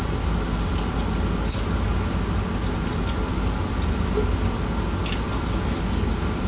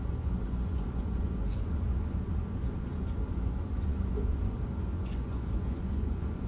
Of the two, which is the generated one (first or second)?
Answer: second